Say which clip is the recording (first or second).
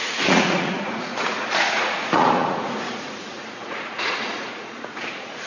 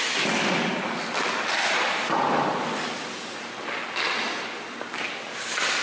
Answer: second